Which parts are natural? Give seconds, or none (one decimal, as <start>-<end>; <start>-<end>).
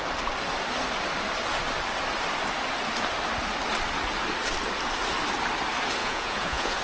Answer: 0.0-6.0